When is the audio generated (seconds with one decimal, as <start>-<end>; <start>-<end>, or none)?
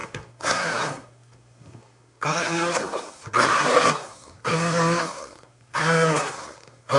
0.0-7.0